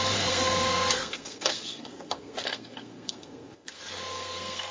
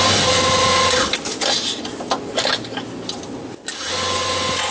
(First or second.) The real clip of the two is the second